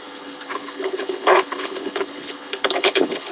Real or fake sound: fake